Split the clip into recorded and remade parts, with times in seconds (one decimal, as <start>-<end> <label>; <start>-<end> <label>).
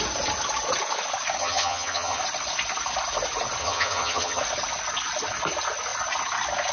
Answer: 0.0-1.4 recorded; 1.4-2.2 remade; 2.2-3.6 recorded; 3.6-4.4 remade; 4.4-6.7 recorded